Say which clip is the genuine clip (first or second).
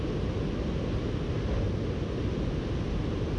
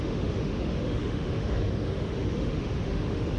first